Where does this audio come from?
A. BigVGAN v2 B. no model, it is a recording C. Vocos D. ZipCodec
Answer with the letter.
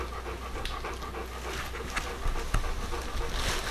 B